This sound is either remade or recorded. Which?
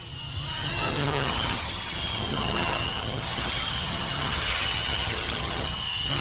remade